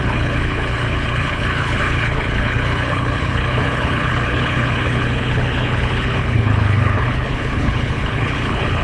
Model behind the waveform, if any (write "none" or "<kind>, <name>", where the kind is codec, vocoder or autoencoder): codec, HILCodec